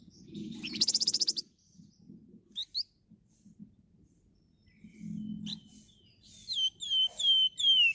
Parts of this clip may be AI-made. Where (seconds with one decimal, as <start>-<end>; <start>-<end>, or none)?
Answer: none

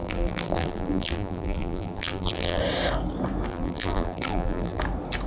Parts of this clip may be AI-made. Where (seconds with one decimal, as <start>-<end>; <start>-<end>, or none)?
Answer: 0.0-2.6; 3.5-4.8

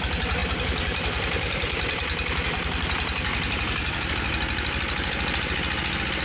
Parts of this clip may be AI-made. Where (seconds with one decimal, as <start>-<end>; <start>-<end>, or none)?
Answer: 0.4-4.1

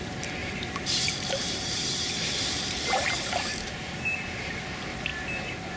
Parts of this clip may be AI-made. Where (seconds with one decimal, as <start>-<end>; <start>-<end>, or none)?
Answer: 0.4-3.9

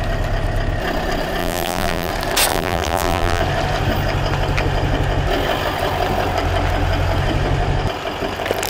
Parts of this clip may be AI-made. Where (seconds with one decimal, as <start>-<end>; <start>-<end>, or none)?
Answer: 1.4-2.1; 2.5-3.4